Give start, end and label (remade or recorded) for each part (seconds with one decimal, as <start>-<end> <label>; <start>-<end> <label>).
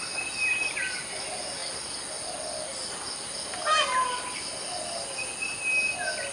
0.0-6.3 recorded